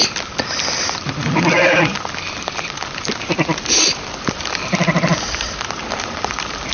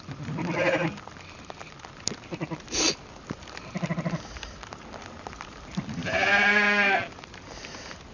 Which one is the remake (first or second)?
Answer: first